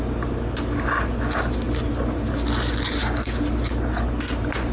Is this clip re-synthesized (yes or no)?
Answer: no